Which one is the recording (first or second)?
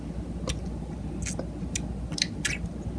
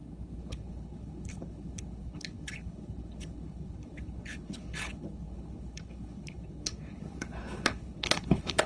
first